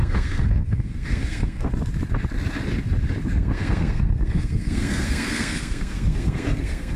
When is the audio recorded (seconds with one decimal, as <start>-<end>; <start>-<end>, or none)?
1.7-3.3